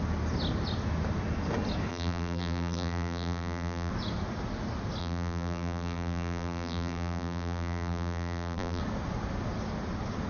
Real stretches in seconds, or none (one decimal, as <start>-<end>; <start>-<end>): 0.0-1.9; 3.9-5.0; 8.8-10.3